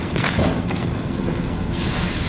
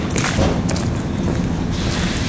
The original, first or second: second